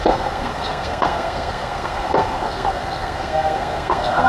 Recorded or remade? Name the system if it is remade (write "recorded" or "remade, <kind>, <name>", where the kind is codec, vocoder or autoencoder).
remade, codec, SNAC